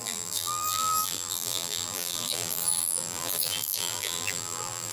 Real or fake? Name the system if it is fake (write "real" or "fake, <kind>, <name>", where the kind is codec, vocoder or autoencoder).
fake, vocoder, BigVGAN v2